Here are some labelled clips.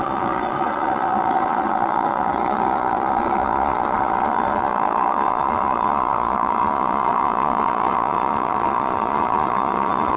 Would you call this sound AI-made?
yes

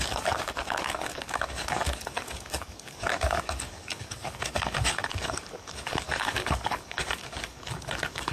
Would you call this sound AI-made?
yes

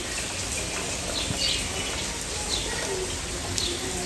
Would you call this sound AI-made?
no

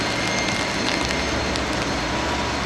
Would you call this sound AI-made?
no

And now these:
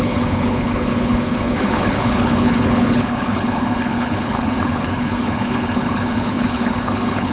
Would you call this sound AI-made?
yes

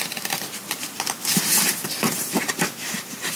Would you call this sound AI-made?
yes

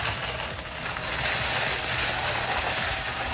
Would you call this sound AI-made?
no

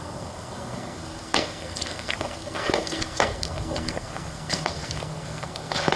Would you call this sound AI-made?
yes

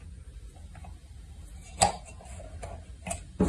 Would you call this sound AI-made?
no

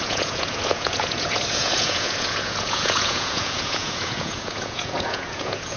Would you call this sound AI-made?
yes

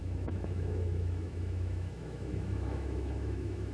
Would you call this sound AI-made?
yes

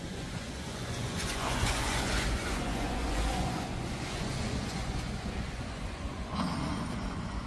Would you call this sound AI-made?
yes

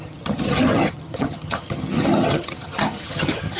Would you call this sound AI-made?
yes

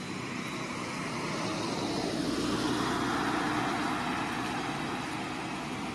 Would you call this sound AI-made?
no